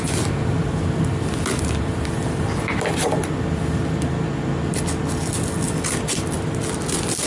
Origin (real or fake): real